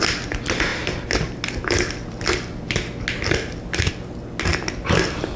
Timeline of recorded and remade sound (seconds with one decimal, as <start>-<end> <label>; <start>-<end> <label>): 0.0-5.4 recorded